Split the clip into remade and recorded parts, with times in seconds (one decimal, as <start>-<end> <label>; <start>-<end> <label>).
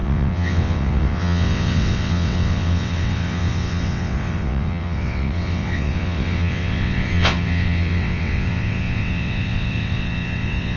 0.0-10.8 remade